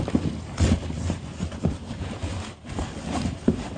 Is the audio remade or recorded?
recorded